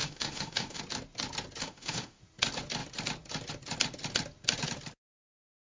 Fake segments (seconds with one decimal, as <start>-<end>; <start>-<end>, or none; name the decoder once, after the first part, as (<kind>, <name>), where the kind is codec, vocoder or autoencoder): 0.0-0.8 (autoencoder, DAC-VAE); 1.6-2.2